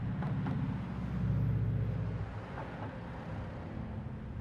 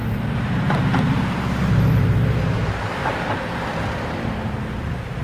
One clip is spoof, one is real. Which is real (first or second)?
first